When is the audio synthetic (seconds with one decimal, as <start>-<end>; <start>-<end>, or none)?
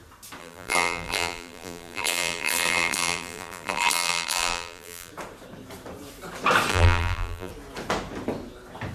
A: 0.4-5.1; 6.7-7.5